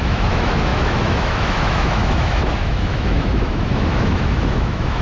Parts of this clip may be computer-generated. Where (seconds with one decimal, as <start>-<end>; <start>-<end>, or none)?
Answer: 0.0-5.0